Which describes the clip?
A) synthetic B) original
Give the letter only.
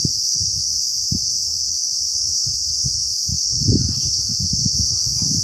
A